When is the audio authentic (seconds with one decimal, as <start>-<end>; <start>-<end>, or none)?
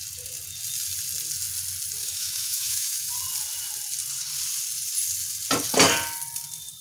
0.0-2.0; 3.1-6.8